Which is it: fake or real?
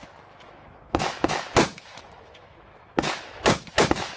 fake